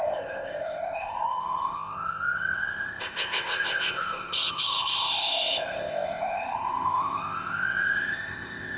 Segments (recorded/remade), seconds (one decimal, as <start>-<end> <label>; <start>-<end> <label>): 0.0-8.8 remade